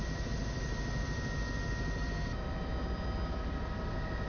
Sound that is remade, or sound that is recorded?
recorded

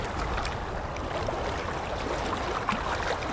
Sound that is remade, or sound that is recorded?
recorded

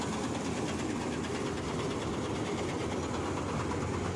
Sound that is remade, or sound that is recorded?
recorded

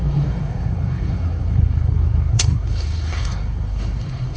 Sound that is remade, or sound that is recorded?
remade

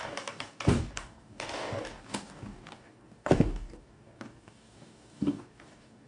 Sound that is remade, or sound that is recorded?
remade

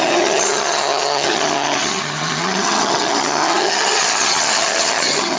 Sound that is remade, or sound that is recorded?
remade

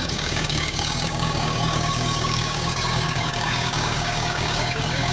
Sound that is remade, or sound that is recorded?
remade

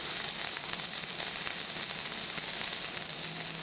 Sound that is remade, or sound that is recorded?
recorded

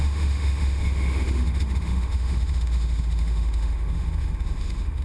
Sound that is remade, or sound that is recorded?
remade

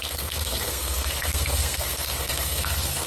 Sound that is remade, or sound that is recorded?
remade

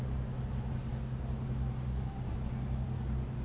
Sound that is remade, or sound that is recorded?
recorded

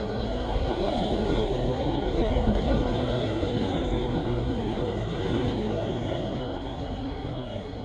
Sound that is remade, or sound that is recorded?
remade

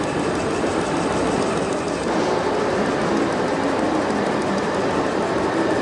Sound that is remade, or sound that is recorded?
recorded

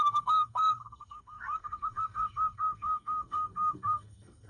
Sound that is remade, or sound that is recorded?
remade